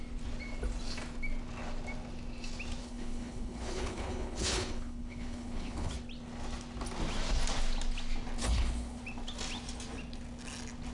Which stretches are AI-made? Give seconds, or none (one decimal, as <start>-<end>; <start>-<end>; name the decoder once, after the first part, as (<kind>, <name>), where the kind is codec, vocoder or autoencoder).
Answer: 2.8-5.9 (codec, HILCodec); 8.4-9.0